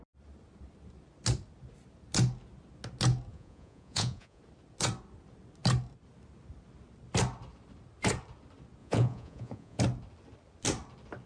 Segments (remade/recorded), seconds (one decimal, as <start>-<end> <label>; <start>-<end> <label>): 0.0-3.3 recorded; 3.3-4.4 remade; 4.4-8.8 recorded; 8.8-9.8 remade; 9.8-11.3 recorded

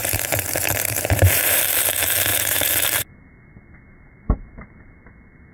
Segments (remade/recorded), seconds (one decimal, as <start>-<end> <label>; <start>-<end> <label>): 0.0-1.6 remade; 1.6-2.3 recorded; 2.3-3.1 remade; 3.1-3.9 recorded; 3.9-5.0 remade; 5.0-5.5 recorded

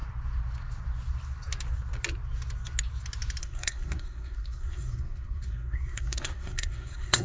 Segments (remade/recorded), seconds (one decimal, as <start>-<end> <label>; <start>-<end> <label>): 0.0-3.4 recorded; 3.4-7.2 remade

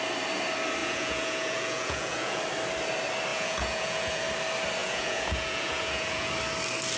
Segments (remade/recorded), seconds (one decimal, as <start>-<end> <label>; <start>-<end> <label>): 0.0-0.8 recorded; 0.8-2.4 remade; 2.4-3.3 recorded; 3.3-4.2 remade; 4.2-4.8 recorded; 4.8-6.3 remade; 6.3-7.0 recorded